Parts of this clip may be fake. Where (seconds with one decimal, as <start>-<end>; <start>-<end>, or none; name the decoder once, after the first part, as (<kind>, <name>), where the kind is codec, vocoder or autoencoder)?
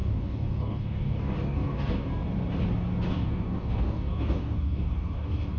0.0-2.1 (codec, DAC); 3.1-5.6